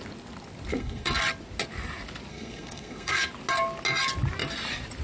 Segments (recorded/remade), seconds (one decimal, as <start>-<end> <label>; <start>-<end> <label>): 0.0-0.7 recorded; 0.7-1.2 remade; 1.2-2.3 recorded; 2.3-3.3 remade; 3.3-5.0 recorded